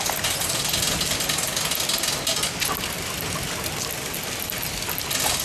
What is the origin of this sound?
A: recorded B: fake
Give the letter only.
A